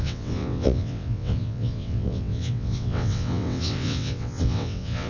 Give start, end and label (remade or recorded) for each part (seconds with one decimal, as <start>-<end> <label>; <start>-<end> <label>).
0.0-5.1 remade